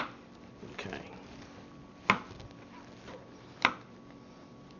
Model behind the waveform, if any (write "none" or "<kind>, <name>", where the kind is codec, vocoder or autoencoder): none